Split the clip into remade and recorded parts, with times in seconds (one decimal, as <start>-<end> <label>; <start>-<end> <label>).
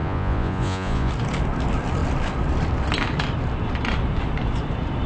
0.0-1.1 remade; 1.1-5.1 recorded